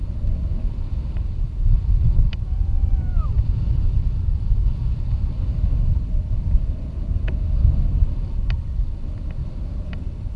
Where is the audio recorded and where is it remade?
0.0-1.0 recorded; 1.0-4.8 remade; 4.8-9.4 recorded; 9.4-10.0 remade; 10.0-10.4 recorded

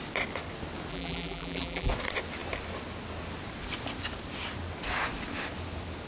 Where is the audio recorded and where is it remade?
0.0-0.9 recorded; 0.9-1.9 remade; 1.9-6.1 recorded

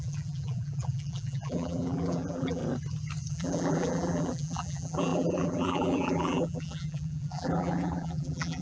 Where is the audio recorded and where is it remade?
0.0-2.6 remade; 2.6-3.3 recorded; 3.3-8.6 remade

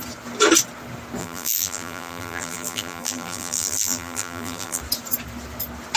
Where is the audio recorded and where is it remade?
0.0-1.2 recorded; 1.2-4.8 remade; 4.8-6.0 recorded

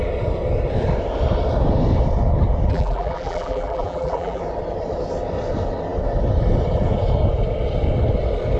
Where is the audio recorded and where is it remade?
0.0-2.7 recorded; 2.7-4.4 remade; 4.4-8.6 recorded

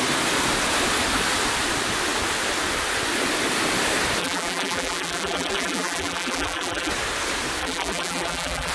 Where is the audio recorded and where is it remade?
0.0-4.2 recorded; 4.2-6.9 remade; 6.9-7.6 recorded; 7.6-8.7 remade

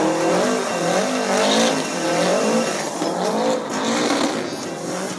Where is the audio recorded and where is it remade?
0.0-2.3 recorded; 2.3-4.4 remade; 4.4-5.2 recorded

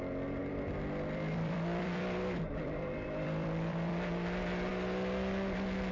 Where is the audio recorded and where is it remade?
0.0-0.4 recorded; 0.4-3.9 remade; 3.9-5.9 recorded